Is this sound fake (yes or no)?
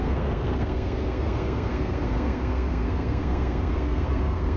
yes